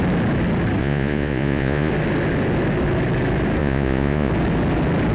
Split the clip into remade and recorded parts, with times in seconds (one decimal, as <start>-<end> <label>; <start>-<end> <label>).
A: 0.0-0.8 recorded; 0.8-1.9 remade; 1.9-3.6 recorded; 3.6-4.3 remade; 4.3-5.1 recorded